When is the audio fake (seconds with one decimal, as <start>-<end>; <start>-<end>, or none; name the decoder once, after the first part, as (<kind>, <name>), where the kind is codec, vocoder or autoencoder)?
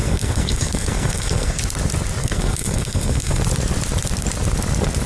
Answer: 0.0-1.6 (codec, SNAC); 2.2-3.4